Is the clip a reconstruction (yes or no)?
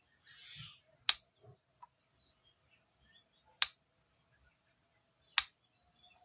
no